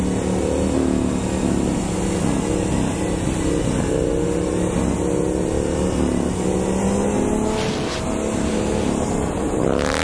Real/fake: real